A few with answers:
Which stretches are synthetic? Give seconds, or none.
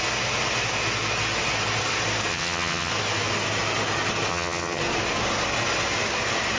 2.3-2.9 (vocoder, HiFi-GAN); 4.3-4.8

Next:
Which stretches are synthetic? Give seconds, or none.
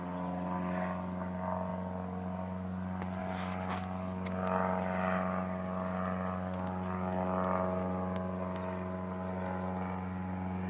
none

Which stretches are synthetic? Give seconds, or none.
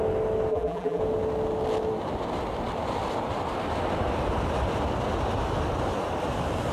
0.5-1.0 (vocoder, BigVGAN v2)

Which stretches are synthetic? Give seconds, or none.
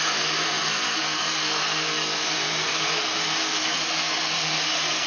0.0-5.1 (codec, SNAC)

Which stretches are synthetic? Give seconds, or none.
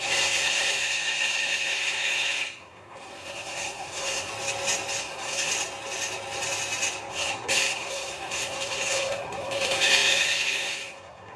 0.0-4.3 (codec, SNAC); 5.0-5.5; 7.1-11.4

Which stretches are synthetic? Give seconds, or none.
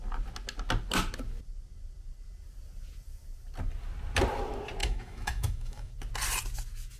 4.8-5.9 (autoencoder, DAC-VAE)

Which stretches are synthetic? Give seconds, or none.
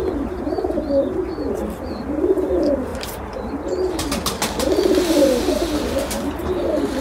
0.0-0.7 (vocoder, BigVGAN v2); 2.9-3.9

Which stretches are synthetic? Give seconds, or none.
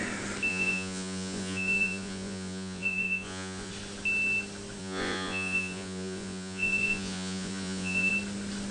0.5-3.7 (vocoder, Vocos); 4.8-8.1